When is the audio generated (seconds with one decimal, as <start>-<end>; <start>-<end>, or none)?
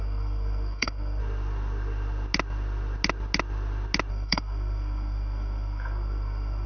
0.0-1.2; 4.1-6.7